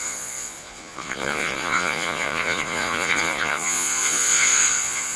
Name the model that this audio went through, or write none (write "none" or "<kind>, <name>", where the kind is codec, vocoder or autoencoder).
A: vocoder, Vocos